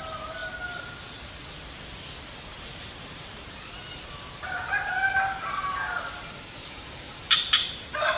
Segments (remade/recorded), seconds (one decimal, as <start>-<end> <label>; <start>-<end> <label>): 0.0-2.5 recorded; 2.5-3.7 remade; 3.7-8.2 recorded